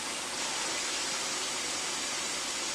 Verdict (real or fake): real